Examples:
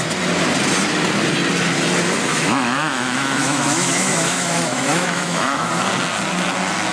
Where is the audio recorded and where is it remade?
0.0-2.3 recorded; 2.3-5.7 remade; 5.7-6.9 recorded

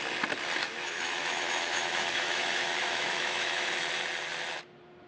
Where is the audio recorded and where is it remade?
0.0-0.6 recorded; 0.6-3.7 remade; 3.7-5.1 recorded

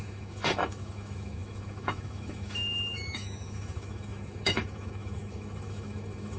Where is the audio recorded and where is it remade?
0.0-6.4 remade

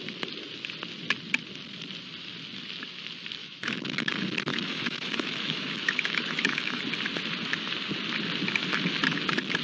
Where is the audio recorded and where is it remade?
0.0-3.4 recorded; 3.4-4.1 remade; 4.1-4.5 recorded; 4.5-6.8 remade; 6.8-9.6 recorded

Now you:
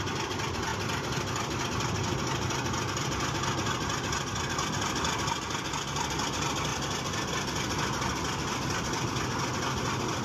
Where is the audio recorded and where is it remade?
0.0-10.2 recorded